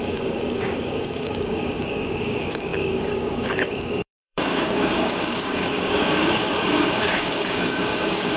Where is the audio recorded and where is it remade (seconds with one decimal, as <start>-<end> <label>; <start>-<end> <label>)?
0.0-8.4 remade